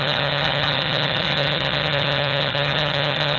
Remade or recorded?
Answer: remade